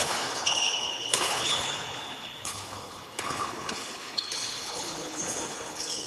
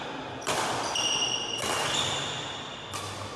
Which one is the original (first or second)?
second